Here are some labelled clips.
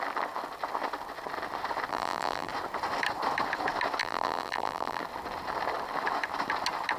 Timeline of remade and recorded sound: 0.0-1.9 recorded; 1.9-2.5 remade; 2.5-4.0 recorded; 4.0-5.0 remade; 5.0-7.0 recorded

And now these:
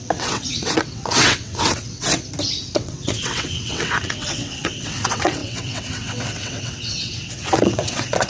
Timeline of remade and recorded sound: 0.0-2.1 remade; 2.1-2.6 recorded; 2.6-8.3 remade